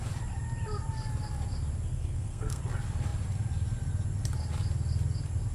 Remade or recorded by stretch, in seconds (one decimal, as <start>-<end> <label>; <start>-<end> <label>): 0.0-1.9 recorded; 1.9-2.6 remade; 2.6-5.5 recorded